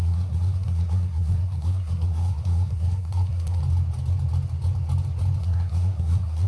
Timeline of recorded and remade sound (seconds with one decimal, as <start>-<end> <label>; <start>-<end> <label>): 0.0-3.6 remade; 3.6-5.4 recorded; 5.4-6.5 remade